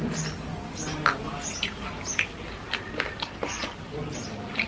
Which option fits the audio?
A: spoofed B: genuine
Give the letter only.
B